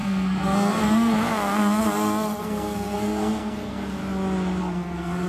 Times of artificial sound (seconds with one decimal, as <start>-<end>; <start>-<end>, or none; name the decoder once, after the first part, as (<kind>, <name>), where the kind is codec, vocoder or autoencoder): 0.0-4.0 (codec, SNAC); 4.6-5.3